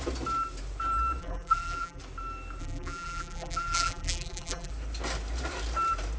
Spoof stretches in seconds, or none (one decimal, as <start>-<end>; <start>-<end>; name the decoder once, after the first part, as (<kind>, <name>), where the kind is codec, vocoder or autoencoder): 1.2-2.0 (vocoder, BigVGAN v2); 2.6-4.7